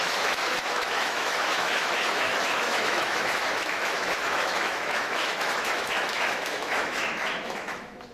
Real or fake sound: fake